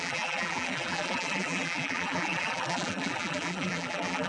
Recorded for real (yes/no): no